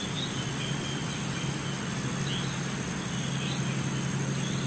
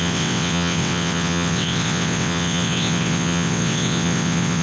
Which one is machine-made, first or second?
second